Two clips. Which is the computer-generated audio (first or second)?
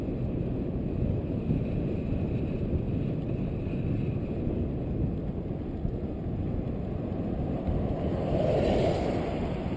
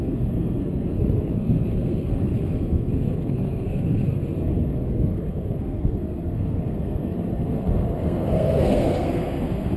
second